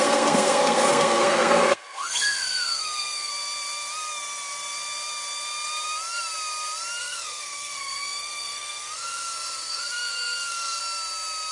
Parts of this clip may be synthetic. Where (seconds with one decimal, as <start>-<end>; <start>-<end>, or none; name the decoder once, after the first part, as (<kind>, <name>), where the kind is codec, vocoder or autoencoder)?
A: 0.0-3.3 (codec, SNAC); 7.0-10.8